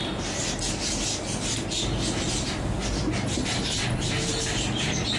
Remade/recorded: recorded